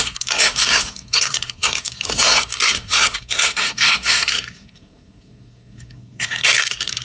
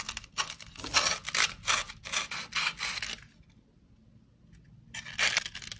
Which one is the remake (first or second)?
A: first